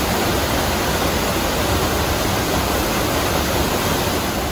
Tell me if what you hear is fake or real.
real